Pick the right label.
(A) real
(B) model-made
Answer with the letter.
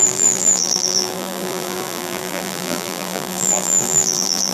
B